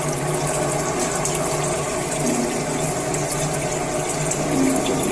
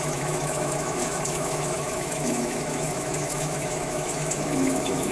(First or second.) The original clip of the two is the first